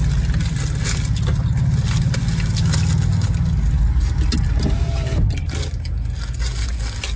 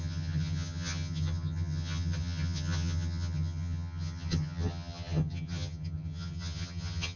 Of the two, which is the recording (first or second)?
first